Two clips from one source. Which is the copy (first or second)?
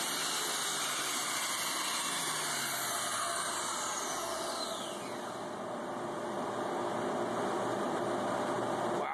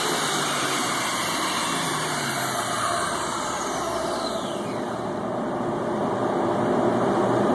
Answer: second